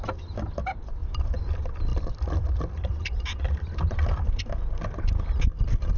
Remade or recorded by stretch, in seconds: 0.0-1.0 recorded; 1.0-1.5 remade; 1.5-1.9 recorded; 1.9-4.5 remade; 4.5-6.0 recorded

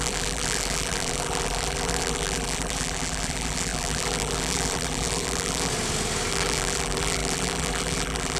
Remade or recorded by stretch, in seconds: 0.0-5.7 remade; 5.7-6.3 recorded; 6.3-8.4 remade

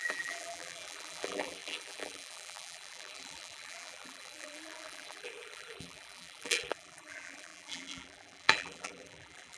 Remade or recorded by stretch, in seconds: 0.0-9.6 remade

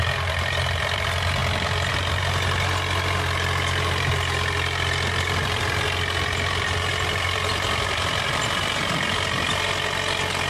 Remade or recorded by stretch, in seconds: 0.0-6.9 recorded; 6.9-8.6 remade; 8.6-10.5 recorded

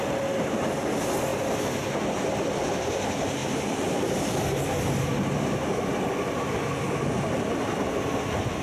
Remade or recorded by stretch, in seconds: 0.0-8.6 recorded

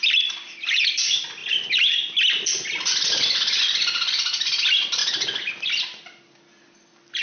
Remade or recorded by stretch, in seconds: 0.0-1.4 remade; 1.4-3.6 recorded; 3.6-5.0 remade; 5.0-6.8 recorded; 6.8-7.2 remade